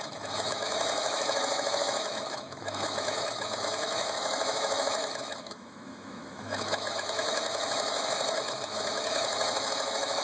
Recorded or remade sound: remade